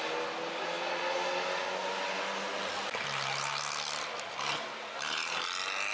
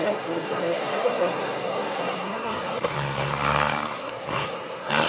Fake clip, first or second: second